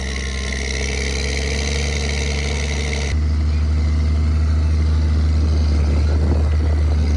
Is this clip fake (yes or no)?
no